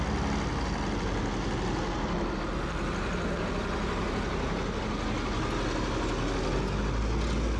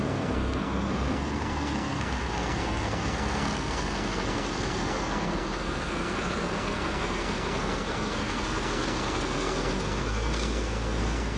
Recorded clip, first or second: first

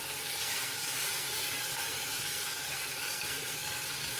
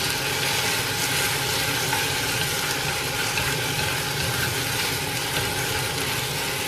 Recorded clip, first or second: second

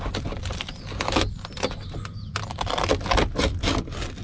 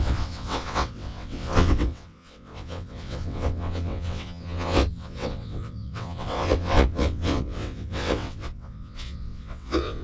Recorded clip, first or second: first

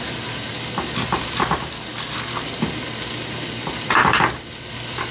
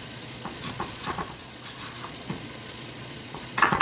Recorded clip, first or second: first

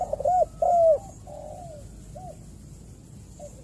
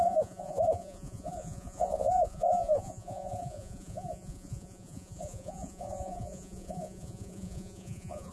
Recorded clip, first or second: first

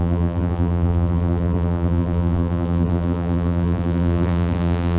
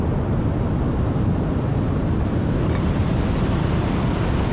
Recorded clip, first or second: second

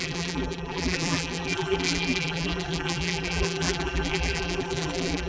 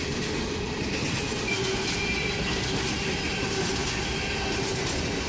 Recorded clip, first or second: second